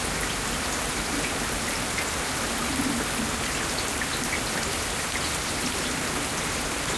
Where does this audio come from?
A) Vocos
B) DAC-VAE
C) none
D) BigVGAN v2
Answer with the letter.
C